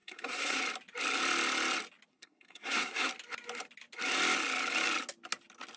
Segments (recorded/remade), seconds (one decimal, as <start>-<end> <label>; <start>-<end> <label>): 0.0-0.6 remade; 0.6-2.1 recorded; 2.1-3.1 remade; 3.1-5.8 recorded